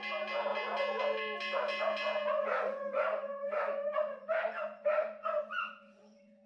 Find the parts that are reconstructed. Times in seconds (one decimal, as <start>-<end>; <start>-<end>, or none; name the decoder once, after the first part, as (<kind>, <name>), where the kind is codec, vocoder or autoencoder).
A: 2.3-6.5 (vocoder, Vocos)